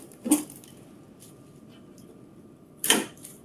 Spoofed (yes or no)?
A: no